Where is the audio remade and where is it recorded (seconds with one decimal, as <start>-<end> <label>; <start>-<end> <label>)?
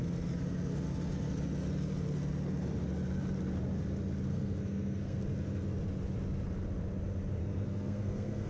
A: 0.0-4.3 recorded; 4.3-5.2 remade; 5.2-7.4 recorded; 7.4-8.5 remade